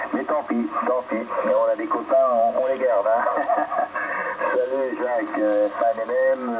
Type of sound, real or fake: real